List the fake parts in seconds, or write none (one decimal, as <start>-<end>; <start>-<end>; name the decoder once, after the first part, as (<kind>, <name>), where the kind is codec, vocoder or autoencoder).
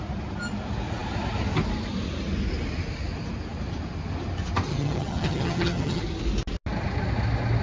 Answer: 4.7-6.0 (vocoder, HiFi-GAN)